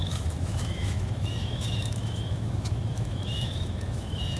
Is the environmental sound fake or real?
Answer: fake